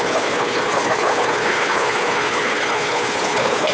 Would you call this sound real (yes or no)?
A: no